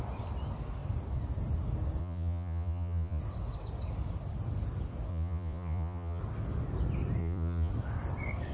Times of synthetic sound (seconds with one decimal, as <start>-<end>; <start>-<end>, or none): 2.0-3.2; 5.1-6.2; 7.2-7.7